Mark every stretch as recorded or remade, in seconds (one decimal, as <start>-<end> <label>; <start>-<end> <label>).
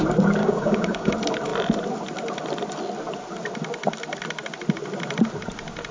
0.0-0.4 recorded; 0.4-1.1 remade; 1.1-5.9 recorded